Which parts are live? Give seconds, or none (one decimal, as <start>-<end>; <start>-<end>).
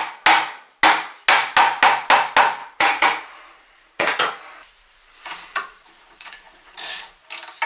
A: 0.0-2.6; 7.2-7.7